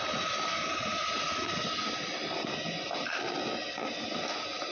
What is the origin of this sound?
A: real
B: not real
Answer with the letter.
A